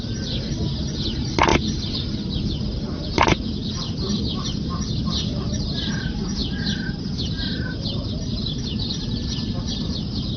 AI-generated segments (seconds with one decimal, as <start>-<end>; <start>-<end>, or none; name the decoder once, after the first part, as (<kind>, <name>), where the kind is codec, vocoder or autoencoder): none